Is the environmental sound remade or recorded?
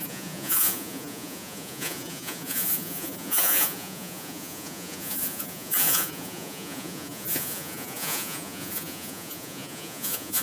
remade